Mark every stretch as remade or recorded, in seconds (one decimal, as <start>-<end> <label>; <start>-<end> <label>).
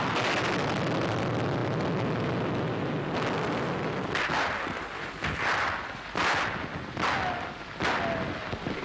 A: 0.0-8.8 recorded